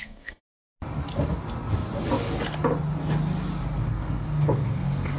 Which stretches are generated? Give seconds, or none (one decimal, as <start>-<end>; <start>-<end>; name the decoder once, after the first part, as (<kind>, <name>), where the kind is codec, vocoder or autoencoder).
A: 0.0-0.7 (codec, SNAC); 3.8-5.2